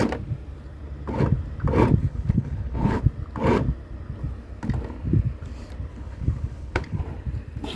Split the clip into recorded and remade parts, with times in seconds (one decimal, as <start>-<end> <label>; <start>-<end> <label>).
0.0-2.0 recorded; 2.0-3.0 remade; 3.0-5.9 recorded; 5.9-7.0 remade; 7.0-7.8 recorded